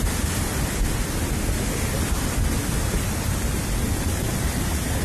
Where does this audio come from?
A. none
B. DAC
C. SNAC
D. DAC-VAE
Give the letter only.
A